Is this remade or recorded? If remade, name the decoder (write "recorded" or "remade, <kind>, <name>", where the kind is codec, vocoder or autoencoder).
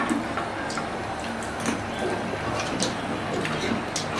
recorded